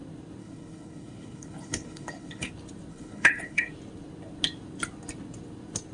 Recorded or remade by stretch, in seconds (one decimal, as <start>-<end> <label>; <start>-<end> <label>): 0.0-0.4 recorded; 0.4-2.5 remade; 2.5-2.9 recorded; 2.9-3.7 remade; 3.7-5.9 recorded